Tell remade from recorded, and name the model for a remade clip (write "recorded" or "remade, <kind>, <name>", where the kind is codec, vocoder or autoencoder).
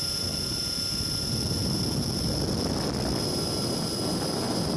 recorded